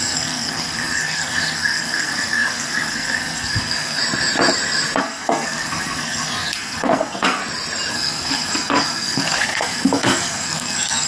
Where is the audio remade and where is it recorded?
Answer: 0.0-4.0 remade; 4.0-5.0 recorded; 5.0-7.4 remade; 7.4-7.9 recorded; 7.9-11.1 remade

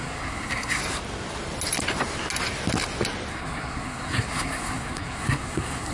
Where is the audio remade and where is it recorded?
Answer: 0.0-0.8 remade; 0.8-3.3 recorded; 3.3-5.9 remade